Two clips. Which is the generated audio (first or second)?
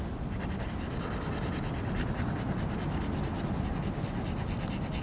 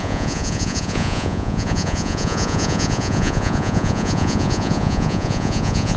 second